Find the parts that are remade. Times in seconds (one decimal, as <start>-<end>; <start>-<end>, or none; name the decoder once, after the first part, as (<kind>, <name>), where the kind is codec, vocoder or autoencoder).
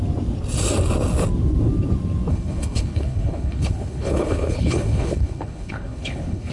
2.3-6.5 (codec, HILCodec)